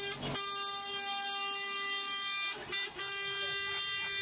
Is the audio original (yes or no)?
yes